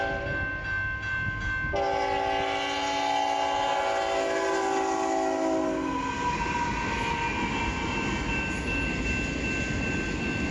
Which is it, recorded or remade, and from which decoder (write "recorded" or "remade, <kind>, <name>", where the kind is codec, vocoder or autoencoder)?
recorded